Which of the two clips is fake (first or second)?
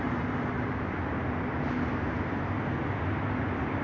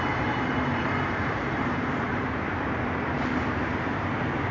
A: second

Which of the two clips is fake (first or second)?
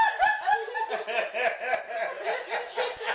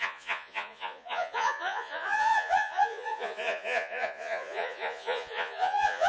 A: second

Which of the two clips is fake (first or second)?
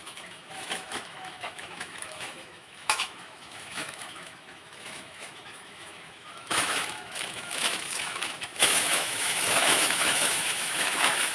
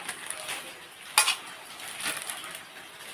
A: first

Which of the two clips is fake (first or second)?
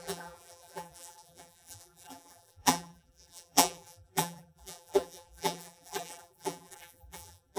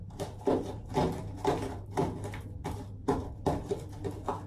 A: first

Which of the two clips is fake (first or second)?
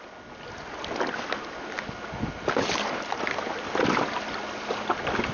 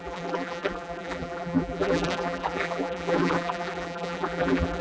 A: second